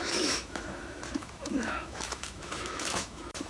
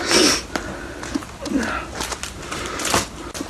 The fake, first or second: first